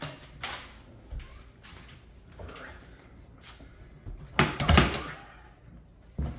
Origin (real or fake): real